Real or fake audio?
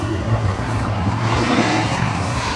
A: fake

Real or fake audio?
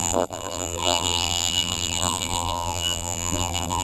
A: fake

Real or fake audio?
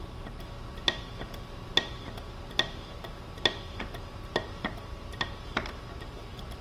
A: real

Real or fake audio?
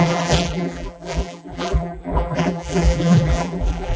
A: fake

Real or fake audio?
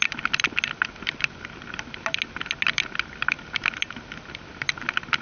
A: real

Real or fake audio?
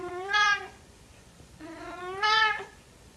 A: fake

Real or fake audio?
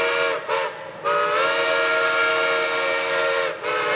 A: real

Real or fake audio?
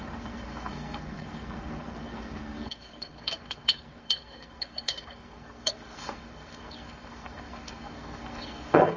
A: fake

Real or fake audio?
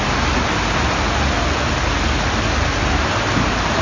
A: real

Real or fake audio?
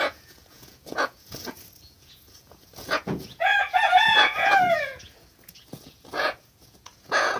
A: fake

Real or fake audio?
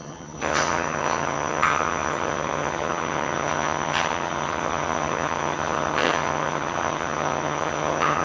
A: fake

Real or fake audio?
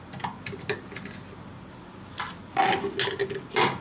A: real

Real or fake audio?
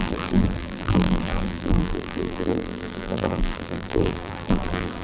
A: fake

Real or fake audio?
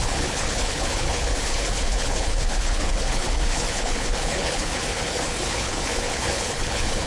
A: fake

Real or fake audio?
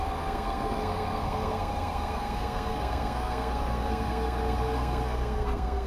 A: fake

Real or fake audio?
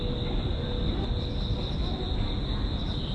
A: real